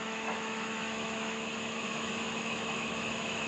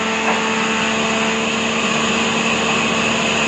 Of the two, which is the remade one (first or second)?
first